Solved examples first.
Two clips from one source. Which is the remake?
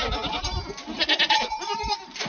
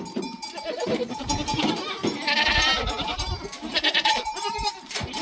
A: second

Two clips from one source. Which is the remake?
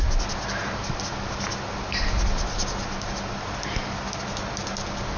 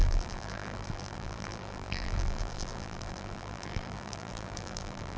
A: second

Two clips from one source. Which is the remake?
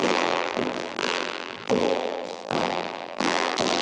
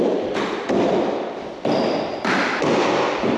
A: first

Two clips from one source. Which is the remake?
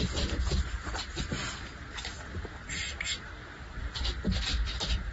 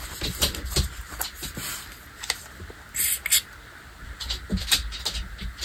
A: first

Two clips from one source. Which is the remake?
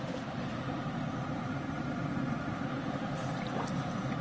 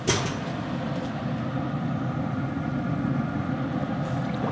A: first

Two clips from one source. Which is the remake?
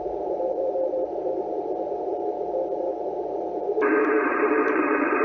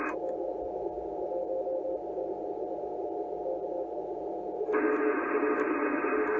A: first